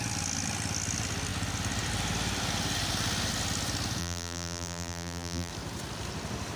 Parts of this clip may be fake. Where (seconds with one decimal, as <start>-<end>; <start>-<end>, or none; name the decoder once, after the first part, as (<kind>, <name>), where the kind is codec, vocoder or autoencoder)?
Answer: 4.0-5.5 (vocoder, BigVGAN v2)